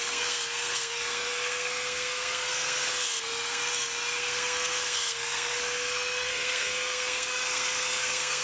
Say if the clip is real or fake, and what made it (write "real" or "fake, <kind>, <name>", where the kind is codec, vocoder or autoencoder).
fake, codec, SNAC